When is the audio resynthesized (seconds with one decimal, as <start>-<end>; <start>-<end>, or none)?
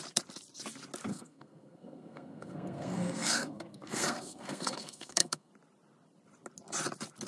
1.1-5.5